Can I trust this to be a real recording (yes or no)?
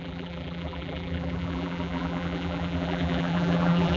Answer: no